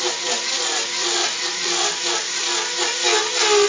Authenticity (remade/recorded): recorded